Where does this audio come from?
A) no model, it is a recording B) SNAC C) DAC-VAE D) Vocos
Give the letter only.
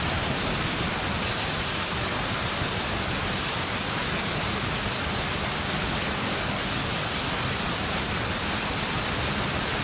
A